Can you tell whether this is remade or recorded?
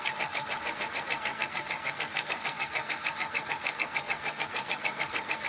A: remade